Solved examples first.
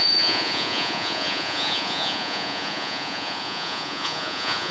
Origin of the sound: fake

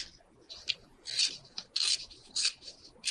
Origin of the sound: real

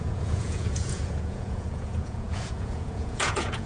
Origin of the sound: fake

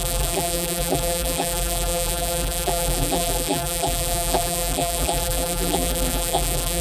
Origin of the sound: fake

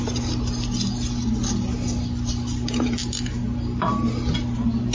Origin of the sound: real